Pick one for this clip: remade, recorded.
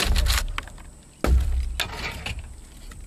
recorded